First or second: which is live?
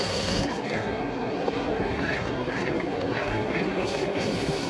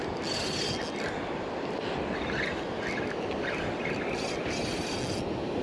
second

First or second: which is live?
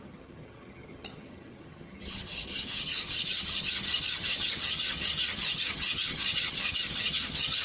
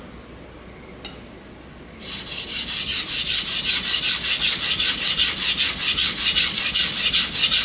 second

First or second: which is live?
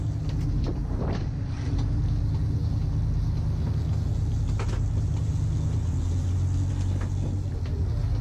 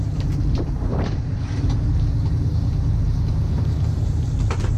first